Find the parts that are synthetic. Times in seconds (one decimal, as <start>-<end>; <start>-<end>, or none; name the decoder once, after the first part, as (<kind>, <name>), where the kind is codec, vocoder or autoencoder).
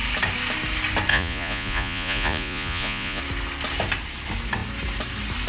1.1-3.2 (vocoder, Vocos)